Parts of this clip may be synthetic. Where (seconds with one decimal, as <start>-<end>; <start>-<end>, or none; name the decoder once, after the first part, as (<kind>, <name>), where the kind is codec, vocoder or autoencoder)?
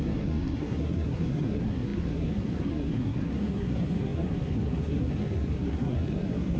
0.0-6.6 (codec, SNAC)